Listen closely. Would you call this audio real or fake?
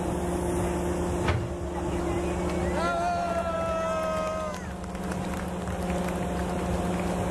real